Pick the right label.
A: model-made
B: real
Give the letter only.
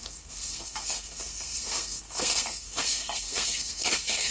A